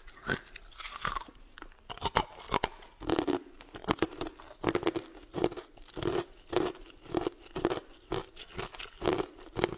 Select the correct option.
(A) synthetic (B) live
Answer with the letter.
B